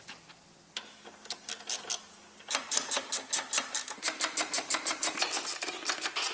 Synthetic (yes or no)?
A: no